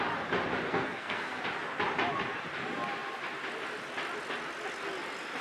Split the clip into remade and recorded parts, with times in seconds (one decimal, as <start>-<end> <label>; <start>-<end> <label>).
0.0-0.7 recorded; 0.7-1.4 remade; 1.4-5.4 recorded